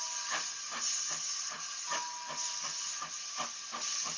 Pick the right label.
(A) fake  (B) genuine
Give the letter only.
B